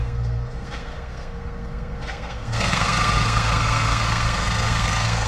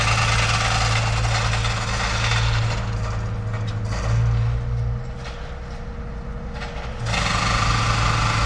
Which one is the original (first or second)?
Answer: second